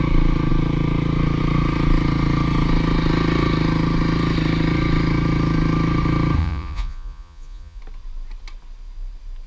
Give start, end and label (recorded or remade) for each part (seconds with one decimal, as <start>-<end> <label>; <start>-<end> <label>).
0.0-6.4 recorded; 6.4-7.8 remade; 7.8-9.5 recorded